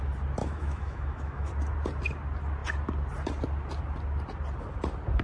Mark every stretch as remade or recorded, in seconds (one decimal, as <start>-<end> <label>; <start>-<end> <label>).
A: 0.0-0.4 recorded; 0.4-1.5 remade; 1.5-5.2 recorded